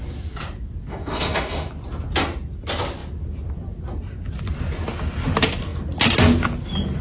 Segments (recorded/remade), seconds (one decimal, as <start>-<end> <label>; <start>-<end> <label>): 0.0-0.9 recorded; 0.9-1.7 remade; 1.7-7.0 recorded